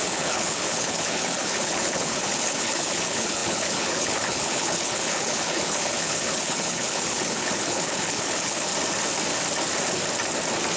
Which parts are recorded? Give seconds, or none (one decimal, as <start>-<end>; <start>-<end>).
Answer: 8.7-10.8